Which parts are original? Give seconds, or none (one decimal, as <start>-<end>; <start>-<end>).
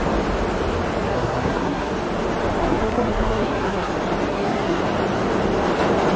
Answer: 0.0-1.1; 1.9-2.6; 3.9-4.3; 4.8-6.2